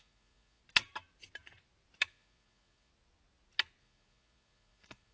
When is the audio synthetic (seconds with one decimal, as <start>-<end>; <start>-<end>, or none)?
0.0-0.6; 2.1-2.9; 3.8-5.1